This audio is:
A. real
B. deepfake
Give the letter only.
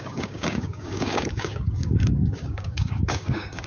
B